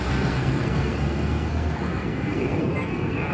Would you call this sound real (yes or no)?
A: no